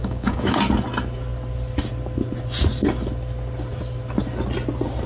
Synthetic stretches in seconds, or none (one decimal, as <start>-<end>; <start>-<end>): 0.0-0.6